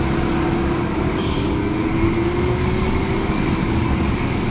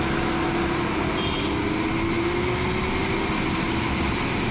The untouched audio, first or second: second